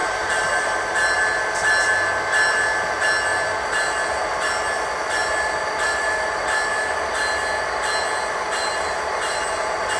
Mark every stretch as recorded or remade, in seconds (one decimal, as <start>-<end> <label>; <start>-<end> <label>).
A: 0.0-0.9 remade; 0.9-8.7 recorded; 8.7-9.4 remade; 9.4-10.0 recorded